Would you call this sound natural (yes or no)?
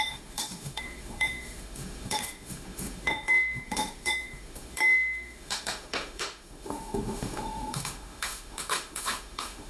no